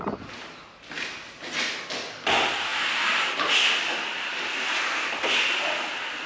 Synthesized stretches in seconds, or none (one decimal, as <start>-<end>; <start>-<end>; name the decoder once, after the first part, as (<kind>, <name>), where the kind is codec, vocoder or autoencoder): none